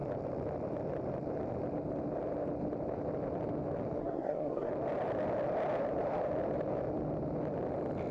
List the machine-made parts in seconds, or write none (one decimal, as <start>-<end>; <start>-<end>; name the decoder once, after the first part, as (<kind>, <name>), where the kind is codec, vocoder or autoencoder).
4.0-4.7 (codec, SNAC)